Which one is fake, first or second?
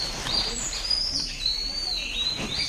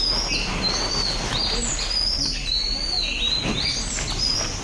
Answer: first